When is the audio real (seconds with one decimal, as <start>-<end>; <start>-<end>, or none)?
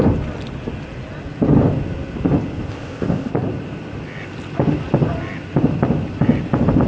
0.0-2.7; 3.3-6.9